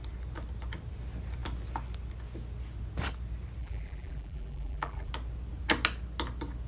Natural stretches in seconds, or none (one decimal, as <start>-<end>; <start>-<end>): 0.0-3.6; 5.1-6.7